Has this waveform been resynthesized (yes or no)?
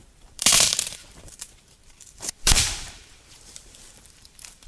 yes